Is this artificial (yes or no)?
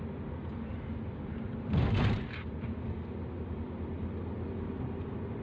no